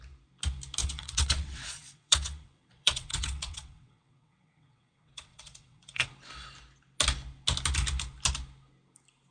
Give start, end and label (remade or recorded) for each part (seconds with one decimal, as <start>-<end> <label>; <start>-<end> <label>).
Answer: 0.0-0.8 recorded; 0.8-6.1 remade; 6.1-9.3 recorded